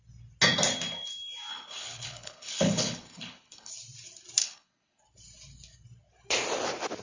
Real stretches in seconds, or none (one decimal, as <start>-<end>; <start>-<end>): 0.0-1.5; 3.7-4.4; 5.0-7.0